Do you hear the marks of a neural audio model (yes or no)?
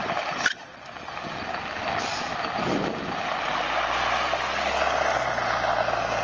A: no